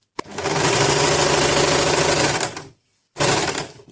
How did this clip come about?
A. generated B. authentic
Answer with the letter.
B